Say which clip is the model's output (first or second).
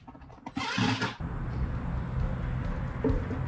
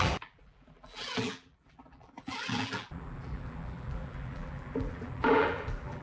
second